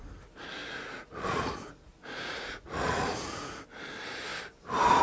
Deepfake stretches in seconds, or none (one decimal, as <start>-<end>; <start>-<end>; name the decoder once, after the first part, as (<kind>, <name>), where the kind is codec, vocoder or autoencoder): 0.6-3.6 (vocoder, Vocos)